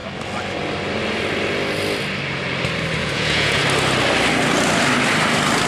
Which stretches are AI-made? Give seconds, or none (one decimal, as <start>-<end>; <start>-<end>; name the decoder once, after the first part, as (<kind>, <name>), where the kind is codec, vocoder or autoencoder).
3.0-3.6 (vocoder, Vocos)